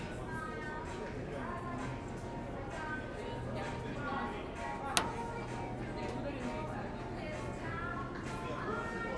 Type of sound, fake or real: real